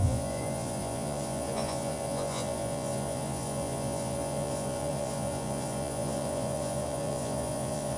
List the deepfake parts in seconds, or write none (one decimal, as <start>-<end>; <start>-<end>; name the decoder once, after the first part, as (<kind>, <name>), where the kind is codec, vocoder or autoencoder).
0.0-8.0 (vocoder, Vocos)